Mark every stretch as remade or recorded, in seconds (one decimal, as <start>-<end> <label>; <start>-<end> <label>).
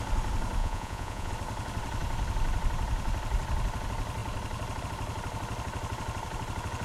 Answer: 0.0-0.6 recorded; 0.6-1.3 remade; 1.3-6.8 recorded